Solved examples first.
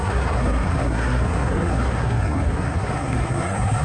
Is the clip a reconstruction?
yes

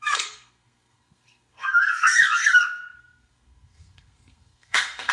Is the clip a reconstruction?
yes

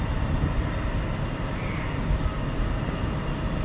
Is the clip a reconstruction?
no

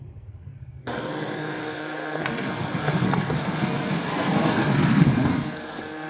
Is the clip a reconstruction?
yes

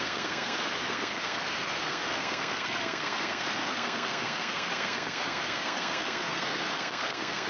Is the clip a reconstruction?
yes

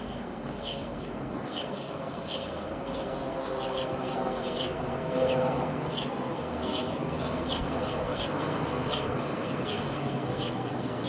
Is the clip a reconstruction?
yes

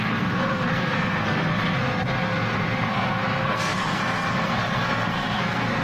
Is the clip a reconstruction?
yes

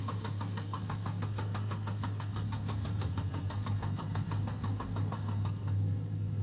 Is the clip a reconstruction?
yes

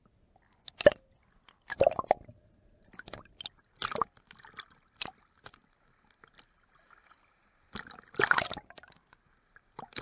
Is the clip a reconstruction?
no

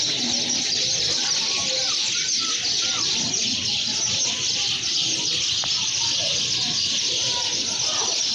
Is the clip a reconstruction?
no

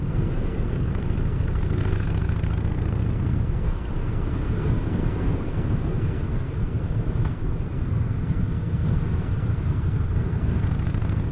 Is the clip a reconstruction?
yes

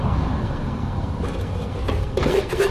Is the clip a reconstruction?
yes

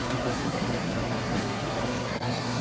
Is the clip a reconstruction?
yes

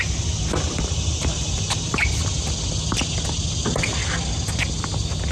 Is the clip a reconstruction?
no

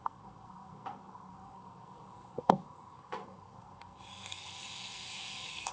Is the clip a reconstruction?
yes